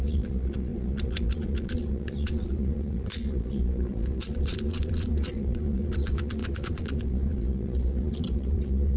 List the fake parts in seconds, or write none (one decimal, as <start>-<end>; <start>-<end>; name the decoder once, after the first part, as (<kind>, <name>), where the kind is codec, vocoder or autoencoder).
0.0-9.0 (vocoder, Vocos)